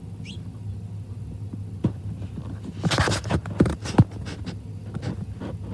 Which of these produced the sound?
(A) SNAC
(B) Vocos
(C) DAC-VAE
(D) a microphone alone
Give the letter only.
D